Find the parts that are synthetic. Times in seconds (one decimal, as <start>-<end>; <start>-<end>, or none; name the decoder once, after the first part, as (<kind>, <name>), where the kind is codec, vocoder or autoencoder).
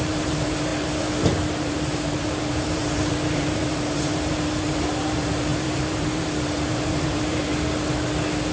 0.0-7.5 (vocoder, BigVGAN v2)